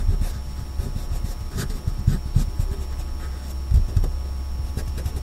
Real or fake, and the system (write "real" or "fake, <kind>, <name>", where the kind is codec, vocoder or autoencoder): real